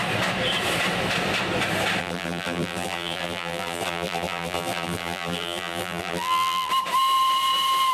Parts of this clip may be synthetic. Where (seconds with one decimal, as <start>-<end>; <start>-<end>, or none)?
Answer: 2.0-6.7